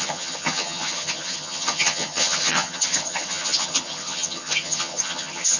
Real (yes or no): no